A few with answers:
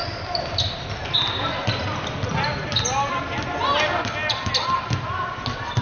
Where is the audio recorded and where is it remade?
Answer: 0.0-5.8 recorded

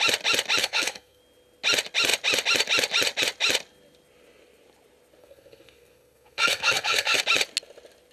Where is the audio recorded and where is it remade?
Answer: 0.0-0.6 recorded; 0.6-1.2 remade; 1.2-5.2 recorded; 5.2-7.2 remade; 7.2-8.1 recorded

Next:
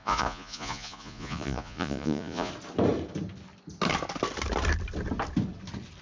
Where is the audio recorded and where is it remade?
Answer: 0.0-2.5 remade; 2.5-6.0 recorded

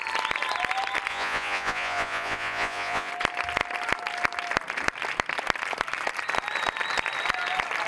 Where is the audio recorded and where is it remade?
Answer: 0.0-1.1 recorded; 1.1-3.1 remade; 3.1-7.9 recorded

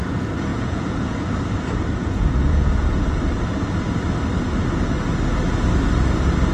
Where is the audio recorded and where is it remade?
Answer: 0.0-0.5 recorded; 0.5-1.3 remade; 1.3-2.0 recorded; 2.0-3.1 remade; 3.1-6.5 recorded

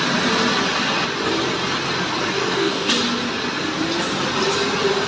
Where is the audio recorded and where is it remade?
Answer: 0.0-2.4 recorded; 2.4-2.9 remade; 2.9-5.1 recorded